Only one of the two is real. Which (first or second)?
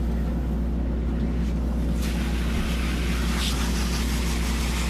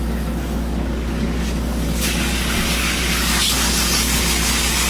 first